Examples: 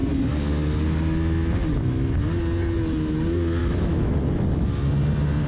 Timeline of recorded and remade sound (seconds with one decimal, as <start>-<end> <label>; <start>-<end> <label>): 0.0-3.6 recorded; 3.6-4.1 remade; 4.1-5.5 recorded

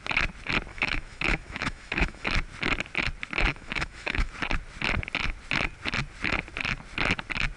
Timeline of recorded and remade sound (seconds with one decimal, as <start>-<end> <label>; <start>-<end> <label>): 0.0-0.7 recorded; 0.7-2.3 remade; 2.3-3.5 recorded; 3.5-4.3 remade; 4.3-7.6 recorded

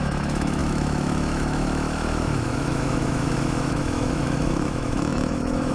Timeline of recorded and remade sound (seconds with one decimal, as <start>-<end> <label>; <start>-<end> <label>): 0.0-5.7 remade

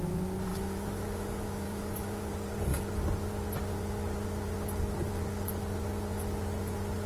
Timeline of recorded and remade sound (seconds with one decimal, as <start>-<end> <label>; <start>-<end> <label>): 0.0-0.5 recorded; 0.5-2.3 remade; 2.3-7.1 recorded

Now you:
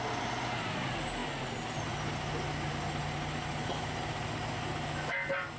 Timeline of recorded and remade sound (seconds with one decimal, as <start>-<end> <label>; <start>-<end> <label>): 0.0-5.6 recorded

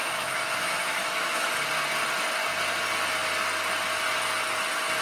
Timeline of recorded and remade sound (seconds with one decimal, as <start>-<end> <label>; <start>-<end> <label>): 0.0-1.5 remade; 1.5-5.0 recorded

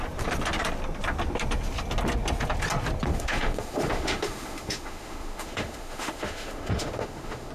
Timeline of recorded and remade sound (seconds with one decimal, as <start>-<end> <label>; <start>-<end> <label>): 0.0-3.1 recorded; 3.1-7.5 remade

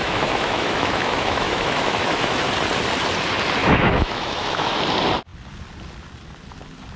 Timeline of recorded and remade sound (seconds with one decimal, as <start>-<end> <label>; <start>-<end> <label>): 0.0-2.5 remade; 2.5-3.6 recorded; 3.6-4.8 remade; 4.8-7.0 recorded